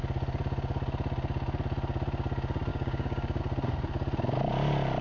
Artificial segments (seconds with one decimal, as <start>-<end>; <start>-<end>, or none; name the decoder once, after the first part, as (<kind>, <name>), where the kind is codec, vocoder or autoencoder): 2.7-3.4 (codec, DAC)